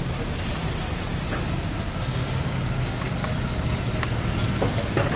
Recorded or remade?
recorded